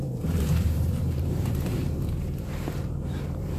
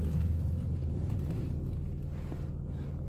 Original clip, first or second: second